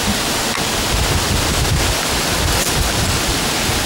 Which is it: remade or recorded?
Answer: recorded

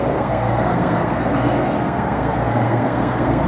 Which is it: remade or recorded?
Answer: remade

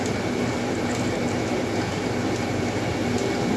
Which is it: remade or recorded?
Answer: recorded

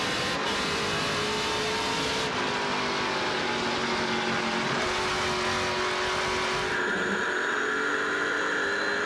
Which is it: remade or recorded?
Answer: recorded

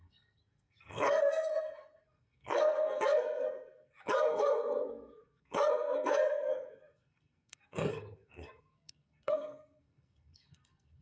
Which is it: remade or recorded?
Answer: remade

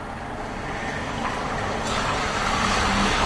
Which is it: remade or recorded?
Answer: recorded